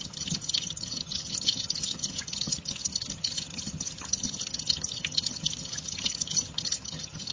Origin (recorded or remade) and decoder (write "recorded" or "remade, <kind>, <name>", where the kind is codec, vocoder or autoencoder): remade, vocoder, HiFi-GAN